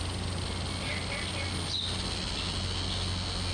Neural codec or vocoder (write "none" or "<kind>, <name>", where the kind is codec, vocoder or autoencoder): none